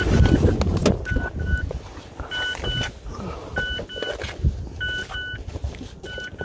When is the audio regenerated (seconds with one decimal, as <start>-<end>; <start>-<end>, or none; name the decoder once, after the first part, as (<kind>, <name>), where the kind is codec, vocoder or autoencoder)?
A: none